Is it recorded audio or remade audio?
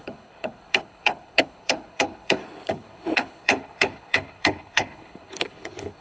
remade